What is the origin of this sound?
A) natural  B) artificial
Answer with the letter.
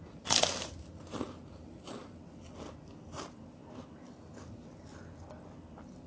A